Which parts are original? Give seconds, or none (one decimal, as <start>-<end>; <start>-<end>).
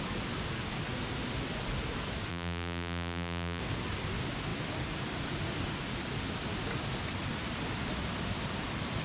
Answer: 0.0-2.3; 3.6-9.0